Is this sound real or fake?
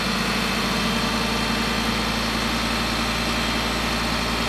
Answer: real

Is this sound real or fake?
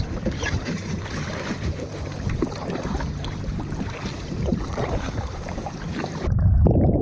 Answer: fake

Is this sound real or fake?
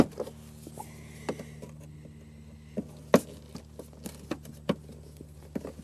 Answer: real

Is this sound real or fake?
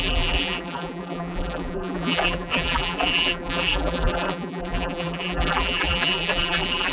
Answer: fake